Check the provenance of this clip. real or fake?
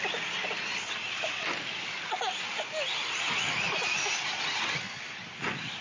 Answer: real